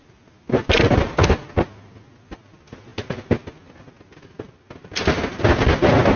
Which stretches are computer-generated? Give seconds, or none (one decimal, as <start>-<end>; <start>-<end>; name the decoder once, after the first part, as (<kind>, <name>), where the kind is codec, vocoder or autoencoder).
none